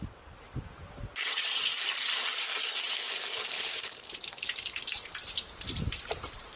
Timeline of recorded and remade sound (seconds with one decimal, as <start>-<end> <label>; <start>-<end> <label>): 0.0-1.7 remade; 1.7-5.7 recorded; 5.7-6.6 remade